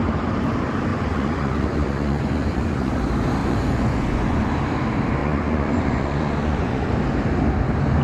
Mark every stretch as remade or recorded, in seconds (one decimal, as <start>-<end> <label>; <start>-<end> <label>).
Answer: 0.0-0.9 recorded; 0.9-3.0 remade; 3.0-3.4 recorded; 3.4-4.5 remade; 4.5-5.2 recorded; 5.2-6.9 remade; 6.9-8.0 recorded